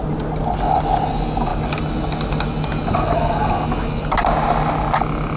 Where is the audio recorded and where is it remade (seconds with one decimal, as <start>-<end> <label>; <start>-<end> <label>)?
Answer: 0.0-5.4 recorded